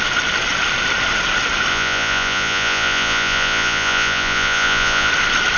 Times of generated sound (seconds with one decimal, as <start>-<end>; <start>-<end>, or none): 1.7-5.1